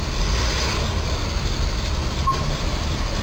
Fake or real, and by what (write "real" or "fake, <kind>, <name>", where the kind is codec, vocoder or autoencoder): real